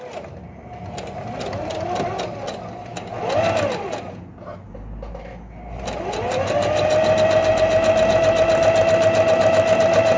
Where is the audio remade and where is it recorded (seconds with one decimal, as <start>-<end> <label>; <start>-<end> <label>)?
0.0-10.2 recorded